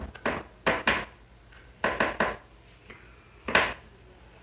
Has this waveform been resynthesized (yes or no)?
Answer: no